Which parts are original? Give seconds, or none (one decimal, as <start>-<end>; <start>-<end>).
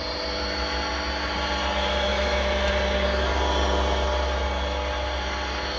0.0-2.1; 2.7-5.8